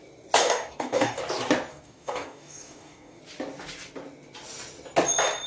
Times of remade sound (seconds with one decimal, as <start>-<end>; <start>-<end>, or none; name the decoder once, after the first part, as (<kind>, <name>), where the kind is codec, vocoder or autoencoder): 0.4-1.2 (codec, DAC); 1.7-3.2